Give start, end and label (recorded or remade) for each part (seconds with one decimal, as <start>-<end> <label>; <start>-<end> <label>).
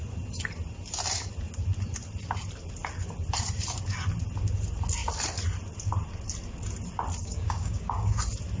0.0-7.2 recorded; 7.2-8.2 remade; 8.2-8.6 recorded